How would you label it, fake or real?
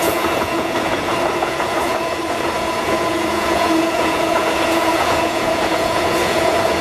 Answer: fake